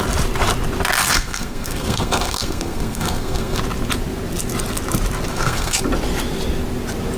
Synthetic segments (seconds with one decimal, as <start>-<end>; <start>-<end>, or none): 1.0-3.6; 5.3-5.8